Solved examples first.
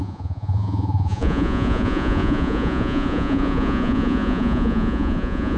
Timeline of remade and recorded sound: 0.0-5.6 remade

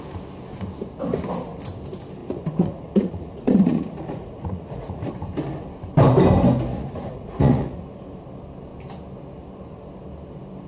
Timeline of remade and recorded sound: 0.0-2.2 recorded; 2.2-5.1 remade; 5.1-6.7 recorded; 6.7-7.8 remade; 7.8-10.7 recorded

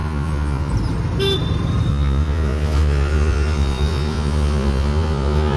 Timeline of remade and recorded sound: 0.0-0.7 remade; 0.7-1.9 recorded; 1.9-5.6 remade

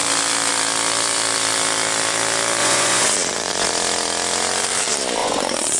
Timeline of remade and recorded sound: 0.0-2.6 recorded; 2.6-3.7 remade; 3.7-5.2 recorded; 5.2-5.8 remade

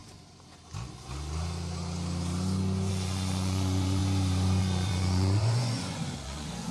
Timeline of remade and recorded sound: 0.0-2.9 recorded; 2.9-4.0 remade; 4.0-4.6 recorded; 4.6-6.7 remade